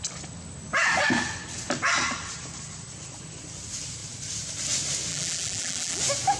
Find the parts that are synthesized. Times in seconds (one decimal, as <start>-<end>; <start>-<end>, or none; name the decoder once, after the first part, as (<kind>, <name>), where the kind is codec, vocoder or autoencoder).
5.1-6.0 (vocoder, BigVGAN v2)